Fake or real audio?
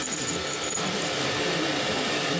real